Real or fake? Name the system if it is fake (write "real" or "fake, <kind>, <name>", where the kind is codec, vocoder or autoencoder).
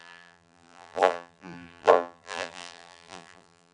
fake, vocoder, BigVGAN v2